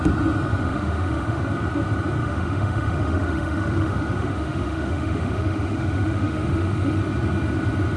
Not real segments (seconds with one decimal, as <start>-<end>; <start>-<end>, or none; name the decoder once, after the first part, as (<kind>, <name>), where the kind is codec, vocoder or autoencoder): 0.6-1.4 (autoencoder, DAC-VAE); 2.2-7.0